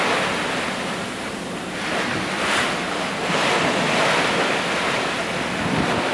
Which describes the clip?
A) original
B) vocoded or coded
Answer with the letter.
A